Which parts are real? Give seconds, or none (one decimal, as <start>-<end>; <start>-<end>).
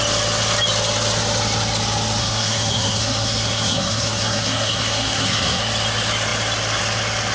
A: 0.0-2.2; 5.6-7.3